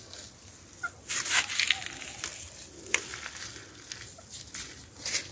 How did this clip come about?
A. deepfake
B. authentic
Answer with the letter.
B